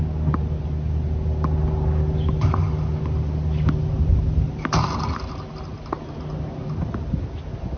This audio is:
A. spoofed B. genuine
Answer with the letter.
B